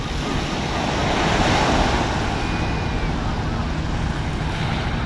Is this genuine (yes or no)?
yes